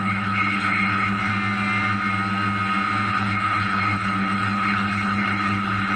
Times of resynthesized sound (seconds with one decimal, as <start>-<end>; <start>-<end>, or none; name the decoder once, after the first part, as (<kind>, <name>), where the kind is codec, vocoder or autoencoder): 0.0-1.3 (codec, HILCodec); 3.1-6.0